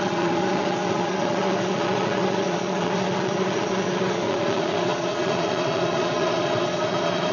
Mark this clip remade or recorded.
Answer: remade